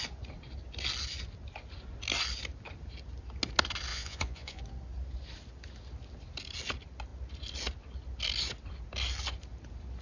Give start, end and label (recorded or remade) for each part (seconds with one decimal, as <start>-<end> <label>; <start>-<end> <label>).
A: 0.0-3.9 recorded; 3.9-4.6 remade; 4.6-10.0 recorded